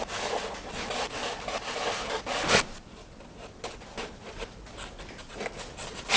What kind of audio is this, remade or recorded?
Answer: recorded